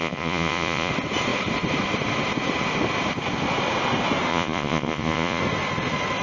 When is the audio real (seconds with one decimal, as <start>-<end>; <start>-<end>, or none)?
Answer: 0.9-4.3; 5.4-6.2